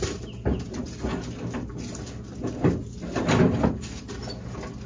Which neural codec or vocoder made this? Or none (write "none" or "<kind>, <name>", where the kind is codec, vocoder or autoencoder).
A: none